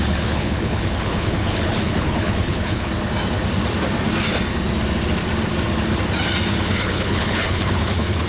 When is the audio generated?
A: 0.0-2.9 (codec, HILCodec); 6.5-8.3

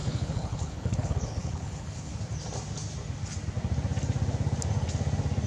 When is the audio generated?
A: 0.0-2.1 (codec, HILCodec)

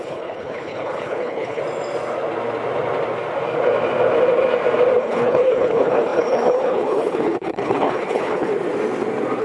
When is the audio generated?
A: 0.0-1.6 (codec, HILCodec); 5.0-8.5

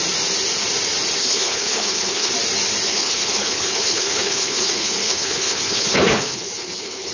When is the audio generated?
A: 1.2-2.3 (codec, HILCodec); 2.9-7.1

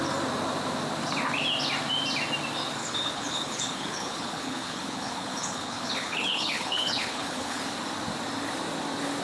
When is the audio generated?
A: 2.8-7.6 (codec, HILCodec)